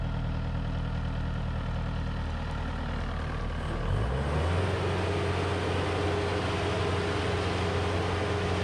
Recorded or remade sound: recorded